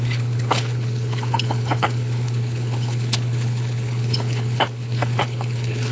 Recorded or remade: remade